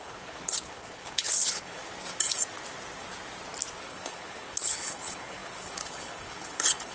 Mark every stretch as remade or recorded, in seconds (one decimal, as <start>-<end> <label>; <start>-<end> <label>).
0.0-1.8 remade; 1.8-3.8 recorded; 3.8-6.9 remade

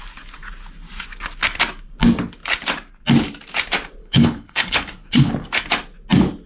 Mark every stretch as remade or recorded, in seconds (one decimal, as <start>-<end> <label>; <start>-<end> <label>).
0.0-4.0 recorded; 4.0-5.3 remade; 5.3-6.5 recorded

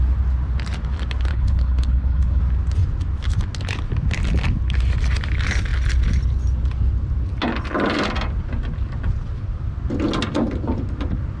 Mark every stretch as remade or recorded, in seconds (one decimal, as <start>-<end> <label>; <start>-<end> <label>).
0.0-1.3 recorded; 1.3-2.4 remade; 2.4-11.4 recorded

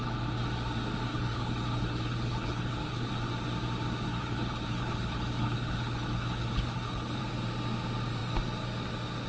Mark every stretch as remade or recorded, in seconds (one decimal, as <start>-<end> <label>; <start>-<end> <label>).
0.0-1.1 recorded; 1.1-3.1 remade; 3.1-4.1 recorded; 4.1-7.2 remade; 7.2-9.3 recorded

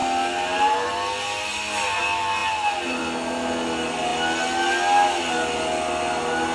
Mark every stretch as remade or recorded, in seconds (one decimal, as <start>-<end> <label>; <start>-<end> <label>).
0.0-6.5 recorded

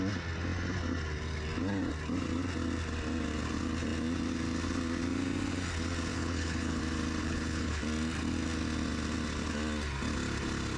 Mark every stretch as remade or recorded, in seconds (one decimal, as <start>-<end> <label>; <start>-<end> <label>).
0.0-6.1 recorded; 6.1-6.8 remade; 6.8-7.2 recorded; 7.2-7.8 remade; 7.8-10.8 recorded

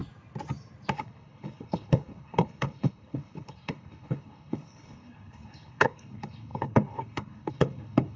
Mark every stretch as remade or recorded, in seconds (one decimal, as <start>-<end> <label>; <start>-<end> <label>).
0.0-0.9 recorded; 0.9-8.2 remade